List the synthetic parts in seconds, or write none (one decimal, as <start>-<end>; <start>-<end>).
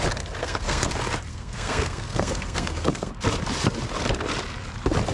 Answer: 0.4-0.9; 1.3-3.1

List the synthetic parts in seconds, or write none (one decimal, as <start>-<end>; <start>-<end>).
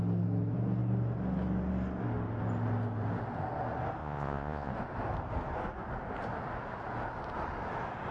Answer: 4.0-4.7